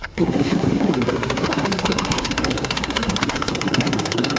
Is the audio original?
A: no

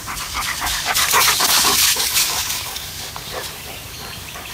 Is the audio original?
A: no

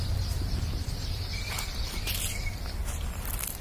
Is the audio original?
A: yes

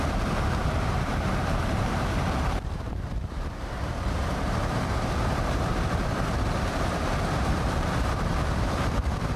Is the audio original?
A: no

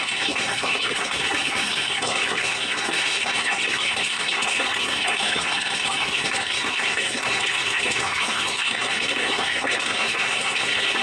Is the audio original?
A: no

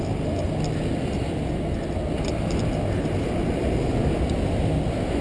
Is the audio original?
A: yes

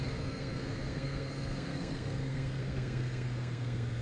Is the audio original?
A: no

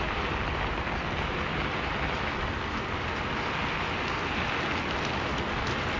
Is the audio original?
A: yes